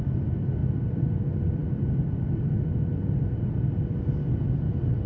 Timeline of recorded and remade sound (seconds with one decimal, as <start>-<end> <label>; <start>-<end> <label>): 0.0-5.1 recorded